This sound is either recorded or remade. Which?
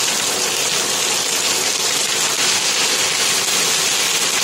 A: recorded